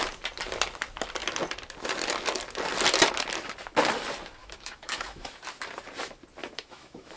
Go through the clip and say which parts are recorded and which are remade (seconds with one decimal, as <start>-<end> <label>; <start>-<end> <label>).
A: 0.0-4.4 recorded; 4.4-5.4 remade; 5.4-6.4 recorded; 6.4-7.2 remade